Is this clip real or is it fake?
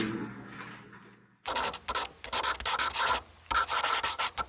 real